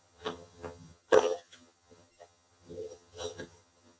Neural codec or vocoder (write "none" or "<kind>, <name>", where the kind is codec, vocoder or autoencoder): vocoder, HiFi-GAN